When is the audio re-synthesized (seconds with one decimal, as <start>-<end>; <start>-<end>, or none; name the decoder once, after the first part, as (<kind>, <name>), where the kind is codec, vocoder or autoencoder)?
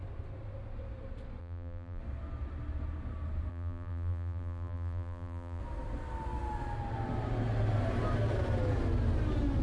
1.4-2.0 (vocoder, BigVGAN v2); 3.5-5.6